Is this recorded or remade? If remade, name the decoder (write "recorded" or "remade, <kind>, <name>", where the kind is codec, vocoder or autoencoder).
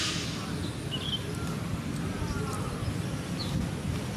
recorded